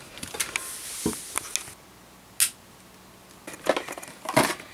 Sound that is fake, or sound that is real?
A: real